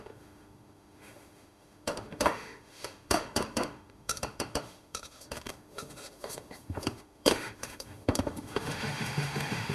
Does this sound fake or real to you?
fake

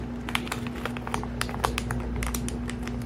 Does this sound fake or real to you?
real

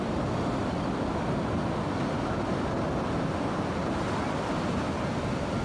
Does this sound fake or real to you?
real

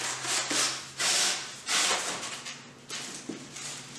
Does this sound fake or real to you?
real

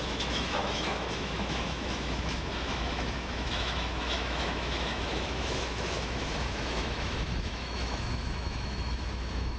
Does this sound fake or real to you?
fake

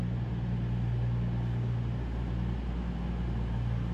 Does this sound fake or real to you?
real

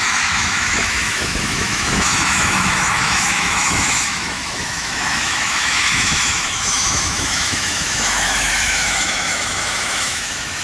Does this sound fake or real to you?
fake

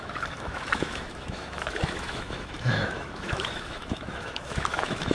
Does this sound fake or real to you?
fake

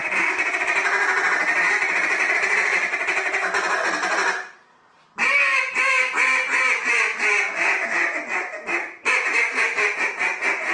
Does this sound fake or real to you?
real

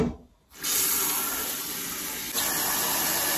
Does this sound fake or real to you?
real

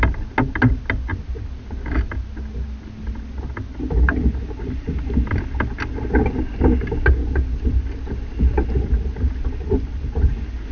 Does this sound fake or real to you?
real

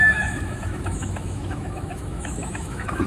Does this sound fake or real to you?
fake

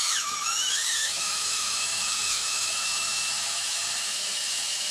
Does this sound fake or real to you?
fake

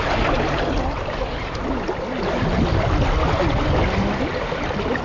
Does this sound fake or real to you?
real